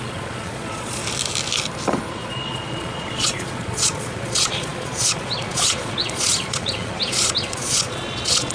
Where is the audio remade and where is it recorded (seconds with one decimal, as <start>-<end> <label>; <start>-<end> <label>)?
0.0-1.0 remade; 1.0-2.1 recorded; 2.1-8.5 remade